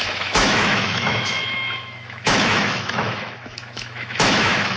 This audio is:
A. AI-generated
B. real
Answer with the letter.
A